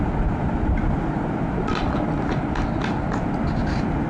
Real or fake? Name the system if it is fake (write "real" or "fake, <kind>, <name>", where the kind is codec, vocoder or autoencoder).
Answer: real